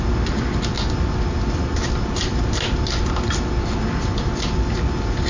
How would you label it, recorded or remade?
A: recorded